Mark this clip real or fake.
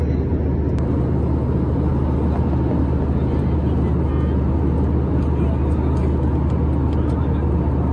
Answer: real